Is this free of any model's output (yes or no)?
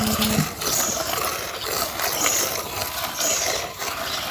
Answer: yes